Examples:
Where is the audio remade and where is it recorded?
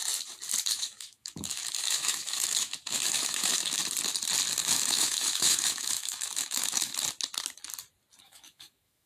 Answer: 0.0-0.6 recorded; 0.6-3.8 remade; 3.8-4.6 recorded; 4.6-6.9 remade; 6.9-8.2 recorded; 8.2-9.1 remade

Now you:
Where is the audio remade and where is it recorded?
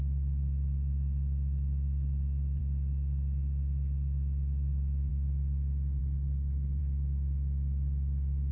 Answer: 0.0-6.0 recorded; 6.0-6.8 remade; 6.8-8.5 recorded